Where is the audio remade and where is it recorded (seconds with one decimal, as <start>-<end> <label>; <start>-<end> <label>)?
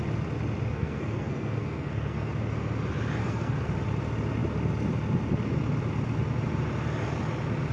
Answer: 0.0-0.7 recorded; 0.7-2.3 remade; 2.3-3.2 recorded; 3.2-3.7 remade; 3.7-7.7 recorded